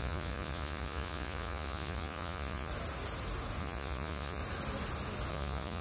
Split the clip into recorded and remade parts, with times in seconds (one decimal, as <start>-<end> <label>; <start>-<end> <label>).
0.0-2.7 remade; 2.7-3.6 recorded; 3.6-4.4 remade; 4.4-5.3 recorded; 5.3-5.8 remade